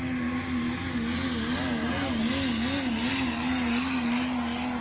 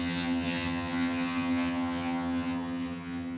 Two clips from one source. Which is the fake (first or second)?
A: second